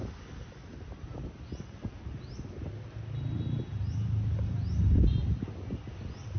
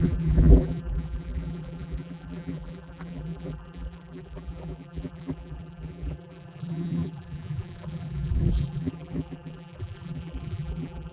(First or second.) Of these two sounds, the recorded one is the first